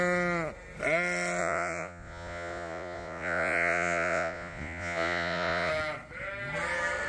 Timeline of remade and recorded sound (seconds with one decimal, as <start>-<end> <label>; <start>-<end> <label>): 0.0-1.4 recorded; 1.4-5.7 remade; 5.7-7.1 recorded